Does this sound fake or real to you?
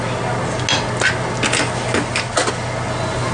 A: real